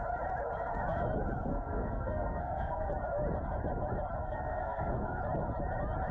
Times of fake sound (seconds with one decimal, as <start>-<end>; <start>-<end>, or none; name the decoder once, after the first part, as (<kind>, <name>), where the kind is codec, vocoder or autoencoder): 1.5-2.9 (codec, SNAC); 4.2-5.2